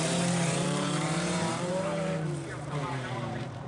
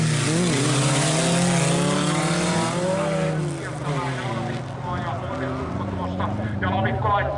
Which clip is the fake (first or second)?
first